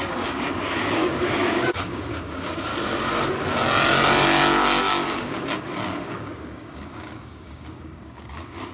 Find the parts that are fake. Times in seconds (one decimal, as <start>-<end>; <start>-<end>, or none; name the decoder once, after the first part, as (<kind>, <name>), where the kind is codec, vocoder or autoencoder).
0.0-2.7 (codec, DAC); 4.8-8.7